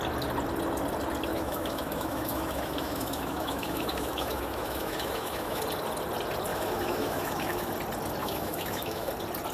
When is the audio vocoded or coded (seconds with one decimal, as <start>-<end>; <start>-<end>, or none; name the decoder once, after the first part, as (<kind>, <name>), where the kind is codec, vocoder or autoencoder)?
1.3-5.6 (autoencoder, DAC-VAE); 6.5-7.7; 8.2-9.1

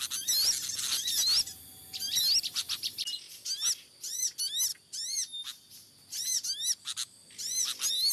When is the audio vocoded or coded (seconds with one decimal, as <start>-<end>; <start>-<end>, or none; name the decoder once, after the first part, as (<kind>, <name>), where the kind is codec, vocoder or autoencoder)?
none

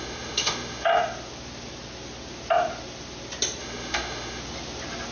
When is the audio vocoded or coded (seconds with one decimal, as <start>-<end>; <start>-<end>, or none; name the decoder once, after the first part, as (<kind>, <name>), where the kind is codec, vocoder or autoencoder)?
0.0-0.9 (autoencoder, DAC-VAE); 3.6-4.4

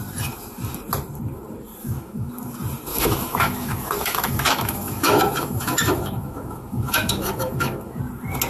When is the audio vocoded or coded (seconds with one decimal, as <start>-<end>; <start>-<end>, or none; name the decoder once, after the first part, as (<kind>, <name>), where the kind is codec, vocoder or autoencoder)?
1.8-2.3 (autoencoder, DAC-VAE); 2.9-8.0

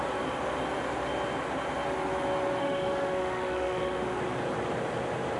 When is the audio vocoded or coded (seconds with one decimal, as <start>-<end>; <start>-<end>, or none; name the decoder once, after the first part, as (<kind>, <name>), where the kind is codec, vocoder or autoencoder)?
2.6-4.2 (autoencoder, DAC-VAE)

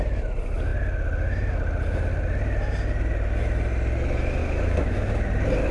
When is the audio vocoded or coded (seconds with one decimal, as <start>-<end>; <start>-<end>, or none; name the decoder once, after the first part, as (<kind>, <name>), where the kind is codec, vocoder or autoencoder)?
4.4-5.1 (autoencoder, DAC-VAE)

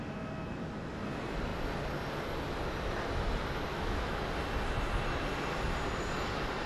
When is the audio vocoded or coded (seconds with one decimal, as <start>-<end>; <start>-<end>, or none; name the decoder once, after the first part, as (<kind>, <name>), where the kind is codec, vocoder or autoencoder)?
3.7-4.2 (autoencoder, DAC-VAE)

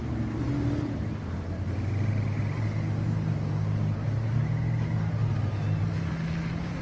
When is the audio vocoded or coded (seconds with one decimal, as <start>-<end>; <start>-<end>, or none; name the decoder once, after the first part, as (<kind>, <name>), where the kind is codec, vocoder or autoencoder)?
none